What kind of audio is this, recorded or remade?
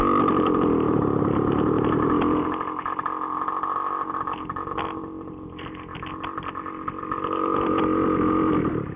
recorded